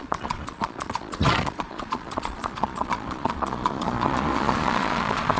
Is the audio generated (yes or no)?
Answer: yes